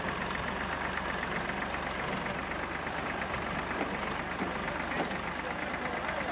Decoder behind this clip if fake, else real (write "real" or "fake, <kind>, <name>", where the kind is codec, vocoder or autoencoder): real